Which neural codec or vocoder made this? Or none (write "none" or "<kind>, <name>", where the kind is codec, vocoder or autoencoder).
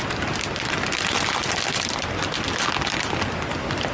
none